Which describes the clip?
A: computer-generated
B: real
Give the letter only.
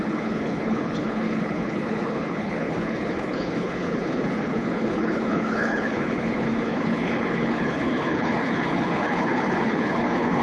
A